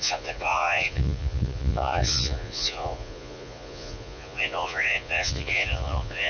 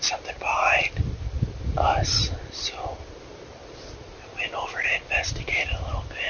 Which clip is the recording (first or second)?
second